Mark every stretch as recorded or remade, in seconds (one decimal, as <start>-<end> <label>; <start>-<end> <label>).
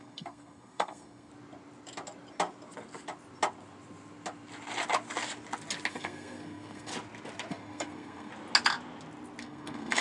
0.0-1.3 remade; 1.3-5.9 recorded; 5.9-6.9 remade; 6.9-7.5 recorded; 7.5-8.3 remade; 8.3-9.4 recorded; 9.4-10.0 remade